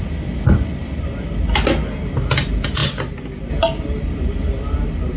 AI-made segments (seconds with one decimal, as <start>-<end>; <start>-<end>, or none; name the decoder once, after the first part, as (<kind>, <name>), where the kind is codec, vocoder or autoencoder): none